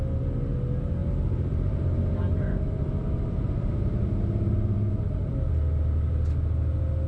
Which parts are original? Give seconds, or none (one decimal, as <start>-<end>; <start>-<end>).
0.0-1.0; 5.3-7.1